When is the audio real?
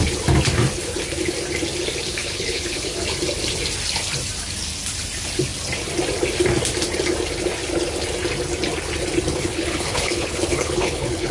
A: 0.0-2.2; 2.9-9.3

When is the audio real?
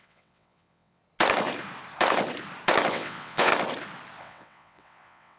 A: 1.0-2.9; 3.5-4.2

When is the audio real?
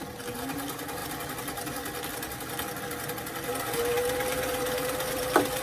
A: 0.0-5.6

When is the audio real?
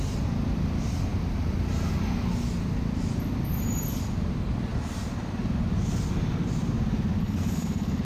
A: 0.0-7.2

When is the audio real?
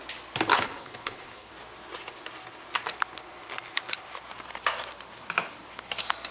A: 0.0-0.5; 1.5-6.3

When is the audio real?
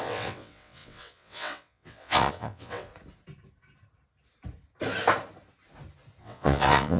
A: 2.9-6.2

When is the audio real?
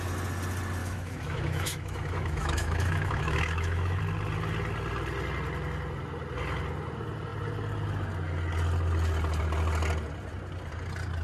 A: 0.0-0.8; 4.0-11.2